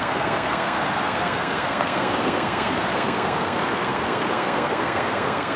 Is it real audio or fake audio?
fake